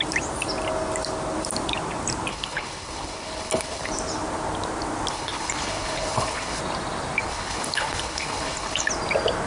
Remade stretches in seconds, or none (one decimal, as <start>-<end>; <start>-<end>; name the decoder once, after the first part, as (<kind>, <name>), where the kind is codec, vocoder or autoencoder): 2.3-3.9 (codec, HILCodec); 5.1-6.6; 7.3-8.9